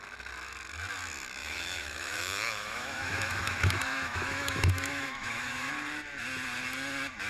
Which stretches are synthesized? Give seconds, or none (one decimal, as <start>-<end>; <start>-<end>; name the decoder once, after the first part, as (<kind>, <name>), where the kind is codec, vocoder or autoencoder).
1.4-5.7 (autoencoder, DAC-VAE)

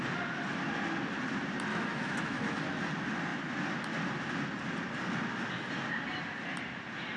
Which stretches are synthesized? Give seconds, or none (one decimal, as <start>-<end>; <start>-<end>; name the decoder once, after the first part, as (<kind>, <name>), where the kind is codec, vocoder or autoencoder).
1.7-2.6 (autoencoder, DAC-VAE)

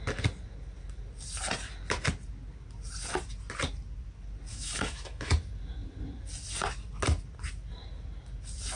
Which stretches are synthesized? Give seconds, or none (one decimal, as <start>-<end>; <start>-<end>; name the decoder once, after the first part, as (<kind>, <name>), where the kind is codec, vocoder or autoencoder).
4.5-5.3 (autoencoder, DAC-VAE)

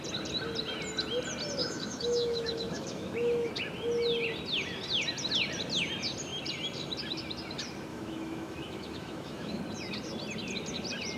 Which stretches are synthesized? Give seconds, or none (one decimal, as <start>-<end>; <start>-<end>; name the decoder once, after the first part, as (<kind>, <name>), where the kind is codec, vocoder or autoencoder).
1.6-3.5 (autoencoder, DAC-VAE); 7.9-9.6

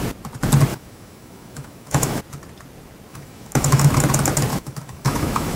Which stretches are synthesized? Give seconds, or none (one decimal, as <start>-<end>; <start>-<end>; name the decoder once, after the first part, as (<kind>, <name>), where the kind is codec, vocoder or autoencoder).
0.7-2.2 (autoencoder, DAC-VAE); 3.1-3.9; 4.5-5.6

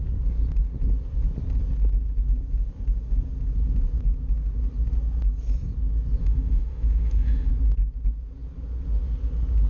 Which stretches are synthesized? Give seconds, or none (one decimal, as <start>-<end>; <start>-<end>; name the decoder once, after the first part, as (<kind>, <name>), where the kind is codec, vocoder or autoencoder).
6.2-7.5 (autoencoder, DAC-VAE)

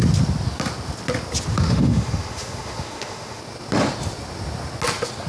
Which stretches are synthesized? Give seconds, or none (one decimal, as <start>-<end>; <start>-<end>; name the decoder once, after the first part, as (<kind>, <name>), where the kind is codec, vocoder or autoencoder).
1.5-3.4 (autoencoder, DAC-VAE)